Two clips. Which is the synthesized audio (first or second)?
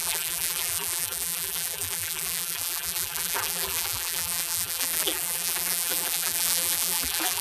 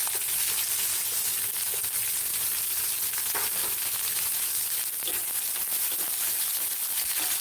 first